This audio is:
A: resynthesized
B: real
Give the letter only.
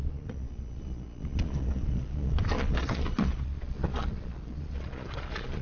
A